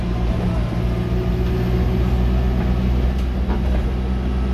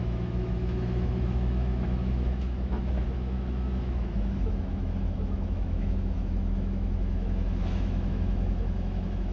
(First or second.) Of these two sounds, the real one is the first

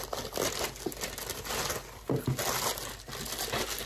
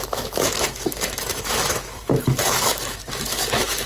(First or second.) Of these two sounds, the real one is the first